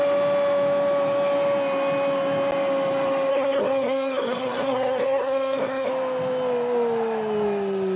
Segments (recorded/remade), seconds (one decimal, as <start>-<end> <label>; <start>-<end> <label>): 0.0-3.3 recorded; 3.3-5.9 remade; 5.9-8.0 recorded